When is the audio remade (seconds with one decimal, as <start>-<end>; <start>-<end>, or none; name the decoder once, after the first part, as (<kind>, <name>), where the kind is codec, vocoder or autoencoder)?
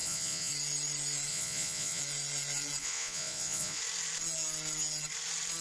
0.0-0.5 (vocoder, Vocos); 1.3-2.0; 2.8-3.8